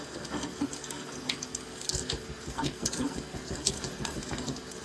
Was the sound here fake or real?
fake